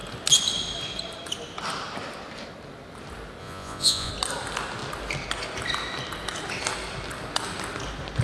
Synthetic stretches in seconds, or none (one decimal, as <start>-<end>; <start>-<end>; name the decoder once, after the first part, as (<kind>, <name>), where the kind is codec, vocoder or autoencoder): 3.4-4.1 (vocoder, Vocos)